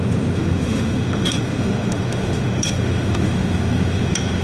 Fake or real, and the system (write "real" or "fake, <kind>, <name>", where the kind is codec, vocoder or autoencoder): fake, autoencoder, DAC-VAE